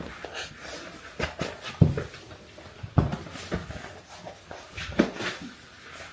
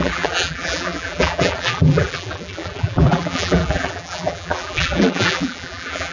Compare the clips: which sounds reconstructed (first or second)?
second